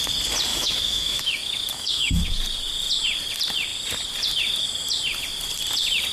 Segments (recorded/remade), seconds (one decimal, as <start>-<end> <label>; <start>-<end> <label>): 0.0-0.5 recorded; 0.5-2.4 remade; 2.4-6.1 recorded